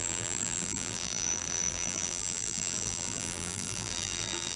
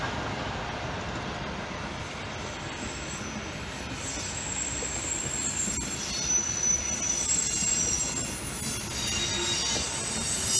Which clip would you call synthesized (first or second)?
first